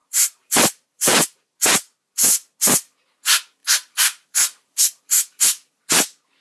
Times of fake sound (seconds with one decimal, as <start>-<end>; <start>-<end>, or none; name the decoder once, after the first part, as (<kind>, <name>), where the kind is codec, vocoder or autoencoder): 0.0-1.1 (vocoder, BigVGAN v2); 3.6-5.8